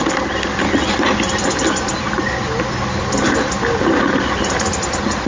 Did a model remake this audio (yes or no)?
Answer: no